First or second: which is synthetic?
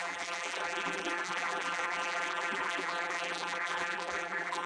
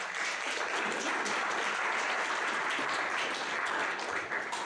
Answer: first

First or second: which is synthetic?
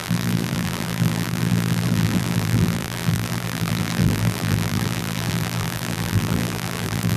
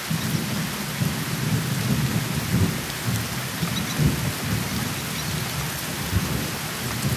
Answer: first